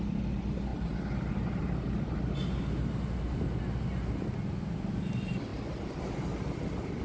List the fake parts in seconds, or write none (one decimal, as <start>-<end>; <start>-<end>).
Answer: none